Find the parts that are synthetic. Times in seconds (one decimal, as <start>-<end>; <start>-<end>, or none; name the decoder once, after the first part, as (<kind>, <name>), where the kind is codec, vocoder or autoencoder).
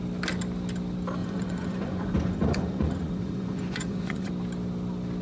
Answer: 1.2-4.3 (vocoder, Vocos)